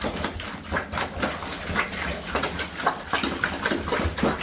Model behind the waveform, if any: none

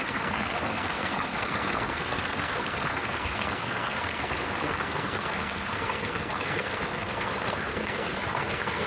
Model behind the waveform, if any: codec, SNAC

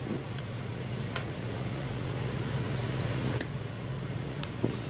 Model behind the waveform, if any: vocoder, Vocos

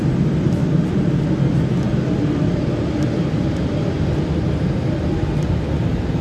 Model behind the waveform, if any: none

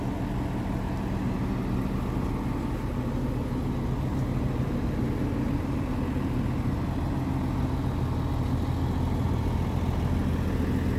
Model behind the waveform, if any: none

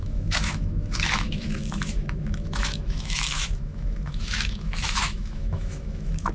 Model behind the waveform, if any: autoencoder, DAC-VAE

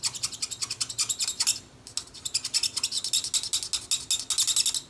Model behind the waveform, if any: none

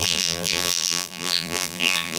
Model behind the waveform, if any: vocoder, BigVGAN v2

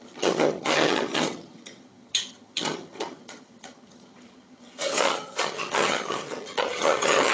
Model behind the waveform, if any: vocoder, HiFi-GAN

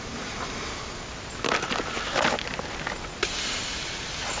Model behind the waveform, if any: none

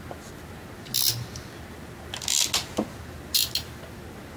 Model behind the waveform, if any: none